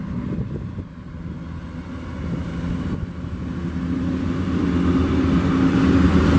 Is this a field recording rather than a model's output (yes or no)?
yes